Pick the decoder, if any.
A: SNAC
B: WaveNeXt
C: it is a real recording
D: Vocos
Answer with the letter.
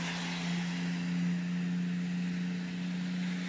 C